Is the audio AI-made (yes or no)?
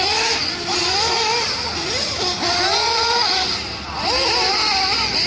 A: no